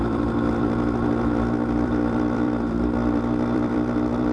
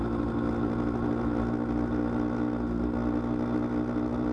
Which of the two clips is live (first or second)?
second